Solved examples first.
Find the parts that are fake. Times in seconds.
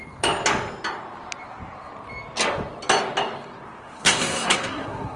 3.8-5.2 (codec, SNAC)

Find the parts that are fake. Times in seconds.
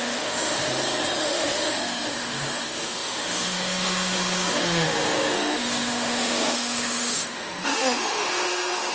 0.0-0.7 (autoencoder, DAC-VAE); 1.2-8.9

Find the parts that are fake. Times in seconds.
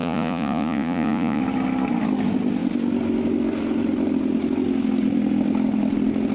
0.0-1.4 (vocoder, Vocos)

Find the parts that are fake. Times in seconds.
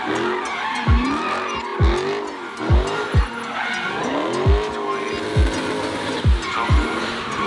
none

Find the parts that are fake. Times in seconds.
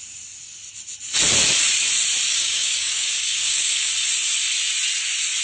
2.3-3.9 (codec, DAC)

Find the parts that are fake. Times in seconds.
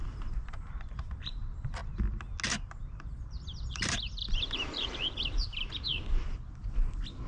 0.0-1.8 (vocoder, BigVGAN v2); 2.5-5.9